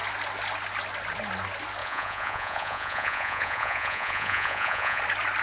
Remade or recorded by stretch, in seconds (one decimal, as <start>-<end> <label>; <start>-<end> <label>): 0.0-1.8 recorded; 1.8-5.0 remade; 5.0-5.4 recorded